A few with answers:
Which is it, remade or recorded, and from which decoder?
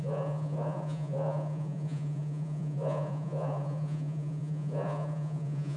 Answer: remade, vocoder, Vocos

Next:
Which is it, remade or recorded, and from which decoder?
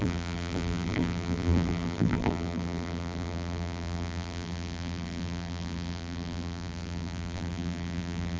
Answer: remade, vocoder, BigVGAN v2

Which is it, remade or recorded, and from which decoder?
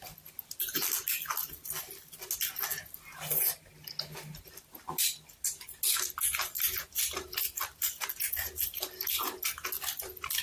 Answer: recorded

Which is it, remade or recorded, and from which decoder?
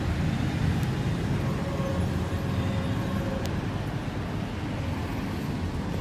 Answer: recorded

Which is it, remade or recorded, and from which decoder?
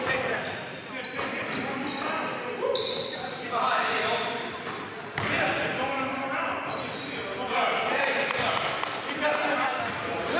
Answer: recorded